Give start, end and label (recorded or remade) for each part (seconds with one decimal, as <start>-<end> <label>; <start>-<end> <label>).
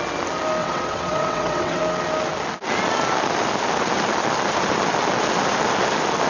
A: 0.0-0.6 recorded; 0.6-1.8 remade; 1.8-6.3 recorded